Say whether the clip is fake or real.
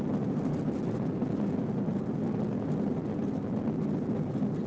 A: real